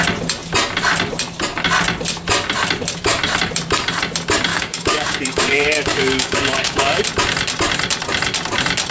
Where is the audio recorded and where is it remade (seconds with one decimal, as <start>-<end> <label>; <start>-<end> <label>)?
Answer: 0.0-4.5 recorded; 4.5-7.0 remade; 7.0-8.9 recorded